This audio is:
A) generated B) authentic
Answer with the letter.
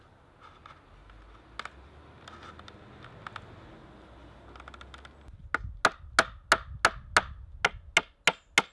B